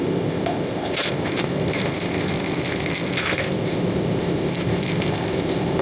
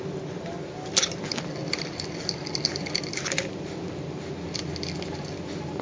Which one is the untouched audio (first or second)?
second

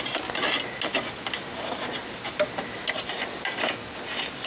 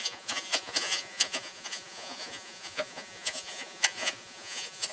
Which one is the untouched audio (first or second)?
first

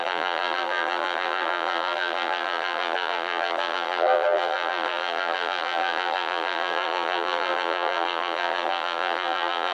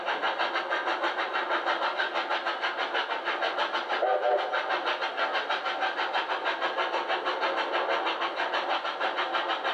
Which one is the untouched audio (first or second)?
second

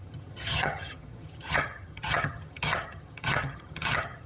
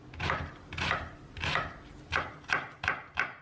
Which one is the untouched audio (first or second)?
second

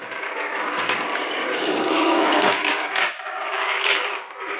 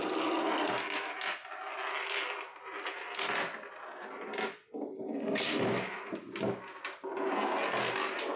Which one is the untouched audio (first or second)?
second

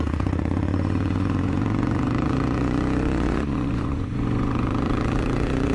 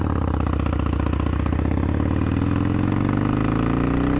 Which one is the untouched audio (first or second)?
second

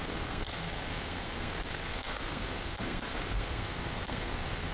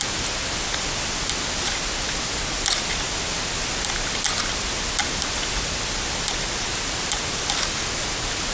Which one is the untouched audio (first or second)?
second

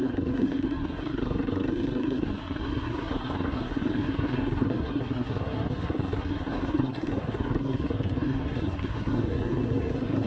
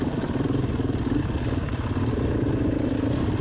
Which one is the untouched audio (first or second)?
second